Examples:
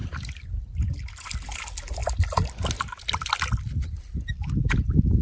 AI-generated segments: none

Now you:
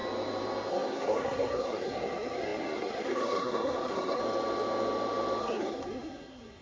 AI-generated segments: 0.7-4.2 (codec, SNAC); 5.4-6.6